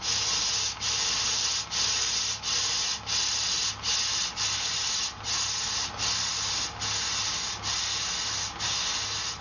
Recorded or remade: recorded